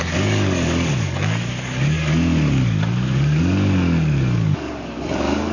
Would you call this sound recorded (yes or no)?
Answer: no